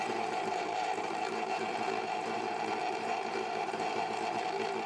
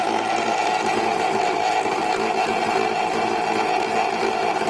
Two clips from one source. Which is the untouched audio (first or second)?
second